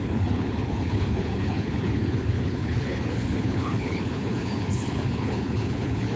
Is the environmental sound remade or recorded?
remade